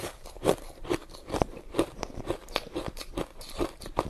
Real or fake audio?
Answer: fake